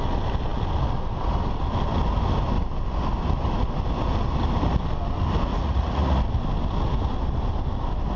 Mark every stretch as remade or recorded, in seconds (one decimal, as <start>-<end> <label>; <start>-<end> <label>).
0.0-5.5 recorded; 5.5-6.2 remade; 6.2-8.2 recorded